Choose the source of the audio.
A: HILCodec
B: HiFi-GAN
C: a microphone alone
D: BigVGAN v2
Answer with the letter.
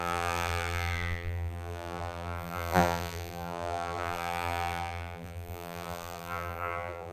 D